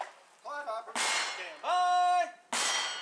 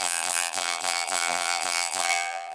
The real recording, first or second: first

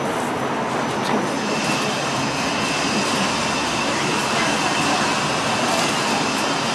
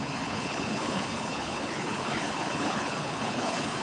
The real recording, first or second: first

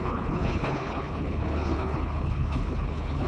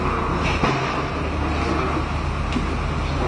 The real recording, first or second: second